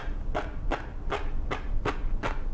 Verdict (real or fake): real